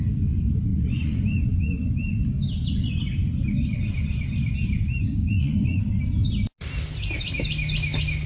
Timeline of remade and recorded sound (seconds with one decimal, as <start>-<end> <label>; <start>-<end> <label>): 0.0-0.7 recorded; 0.7-1.9 remade; 1.9-5.2 recorded; 5.2-5.8 remade; 5.8-8.3 recorded